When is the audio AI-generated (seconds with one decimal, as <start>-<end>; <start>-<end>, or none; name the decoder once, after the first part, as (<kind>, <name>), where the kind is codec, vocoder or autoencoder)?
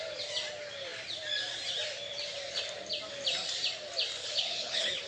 4.2-5.1 (codec, HILCodec)